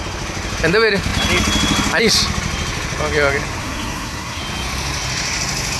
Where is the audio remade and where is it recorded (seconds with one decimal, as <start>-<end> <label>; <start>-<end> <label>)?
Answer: 0.0-3.6 recorded; 3.6-4.4 remade; 4.4-5.8 recorded